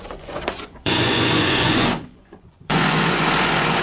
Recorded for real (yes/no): no